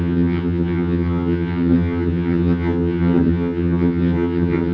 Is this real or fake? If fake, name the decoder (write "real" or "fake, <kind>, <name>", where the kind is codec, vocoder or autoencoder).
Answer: fake, vocoder, HiFi-GAN